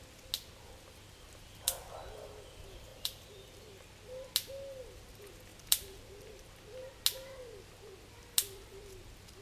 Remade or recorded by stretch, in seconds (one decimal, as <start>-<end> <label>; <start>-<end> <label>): 0.0-2.9 recorded; 2.9-3.6 remade; 3.6-9.4 recorded